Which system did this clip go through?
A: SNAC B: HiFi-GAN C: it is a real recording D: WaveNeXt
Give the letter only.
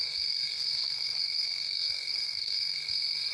A